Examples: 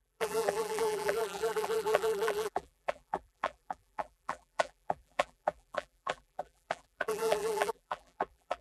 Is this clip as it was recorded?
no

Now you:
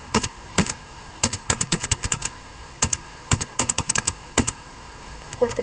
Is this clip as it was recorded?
no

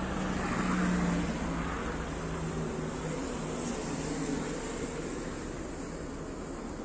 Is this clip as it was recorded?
yes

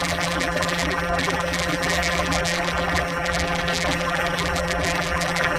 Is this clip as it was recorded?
no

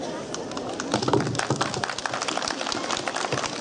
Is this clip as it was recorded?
yes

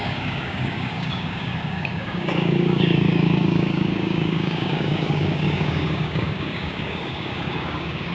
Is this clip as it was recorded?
no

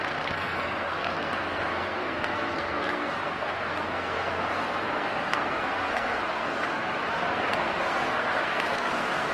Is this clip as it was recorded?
no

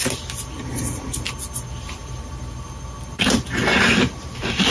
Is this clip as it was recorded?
yes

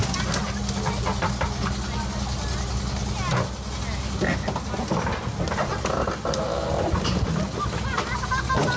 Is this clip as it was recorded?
yes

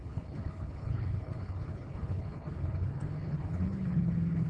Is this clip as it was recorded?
no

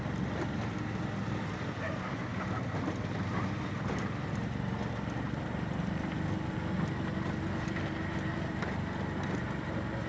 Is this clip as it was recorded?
yes